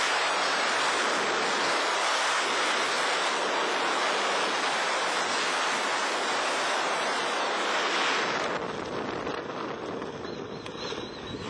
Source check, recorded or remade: recorded